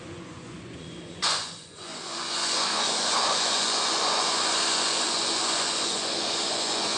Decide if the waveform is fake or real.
fake